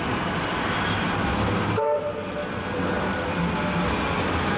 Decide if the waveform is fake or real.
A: real